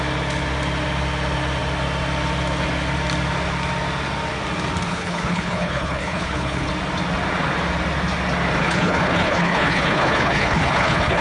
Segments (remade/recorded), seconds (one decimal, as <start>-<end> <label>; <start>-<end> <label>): 0.0-4.9 recorded; 4.9-6.7 remade; 6.7-8.6 recorded; 8.6-11.2 remade